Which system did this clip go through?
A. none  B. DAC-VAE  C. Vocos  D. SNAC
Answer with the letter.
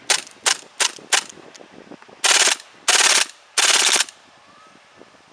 A